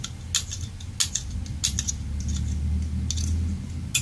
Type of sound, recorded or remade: recorded